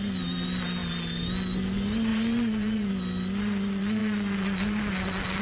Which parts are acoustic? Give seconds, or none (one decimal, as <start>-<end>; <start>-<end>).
0.0-5.4